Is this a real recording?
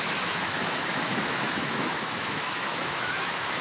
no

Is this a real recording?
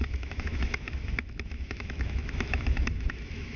no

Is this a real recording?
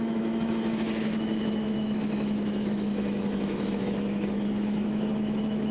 no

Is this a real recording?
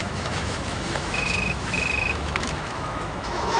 no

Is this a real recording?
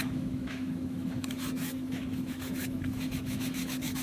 no